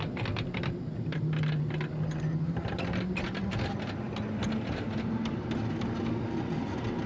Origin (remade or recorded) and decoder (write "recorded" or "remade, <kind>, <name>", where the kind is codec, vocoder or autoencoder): recorded